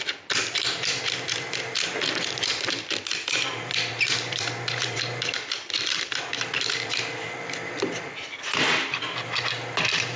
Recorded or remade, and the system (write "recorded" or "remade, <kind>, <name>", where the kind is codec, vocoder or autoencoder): remade, vocoder, BigVGAN v2